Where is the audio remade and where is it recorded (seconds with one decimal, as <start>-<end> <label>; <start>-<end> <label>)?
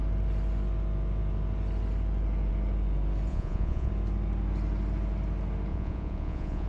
0.0-3.3 recorded; 3.3-3.9 remade; 3.9-5.7 recorded; 5.7-6.7 remade